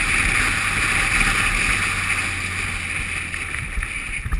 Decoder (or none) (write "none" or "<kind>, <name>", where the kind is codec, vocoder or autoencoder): none